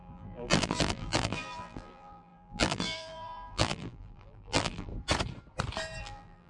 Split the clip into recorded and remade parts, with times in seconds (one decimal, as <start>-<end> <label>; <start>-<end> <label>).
0.0-4.9 remade; 4.9-6.0 recorded; 6.0-6.5 remade